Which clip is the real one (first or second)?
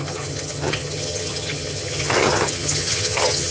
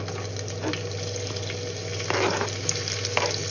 second